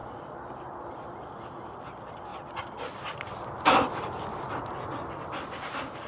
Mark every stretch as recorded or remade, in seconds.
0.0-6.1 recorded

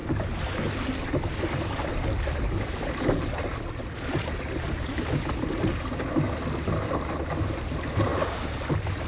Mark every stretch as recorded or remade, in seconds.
0.0-9.1 recorded